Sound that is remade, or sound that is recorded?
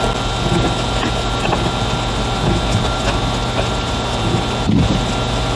recorded